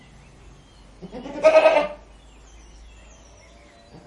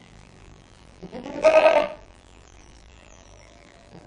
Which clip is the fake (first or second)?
second